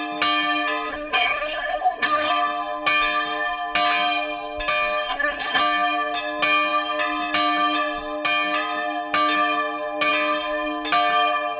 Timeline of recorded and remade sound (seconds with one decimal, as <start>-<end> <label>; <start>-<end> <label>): 0.0-0.9 recorded; 0.9-2.3 remade; 2.3-5.1 recorded; 5.1-5.6 remade; 5.6-11.6 recorded